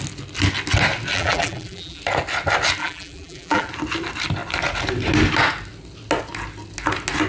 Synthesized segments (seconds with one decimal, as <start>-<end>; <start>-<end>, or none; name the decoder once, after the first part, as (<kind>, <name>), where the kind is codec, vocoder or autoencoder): 1.1-2.0 (vocoder, BigVGAN v2); 2.8-3.7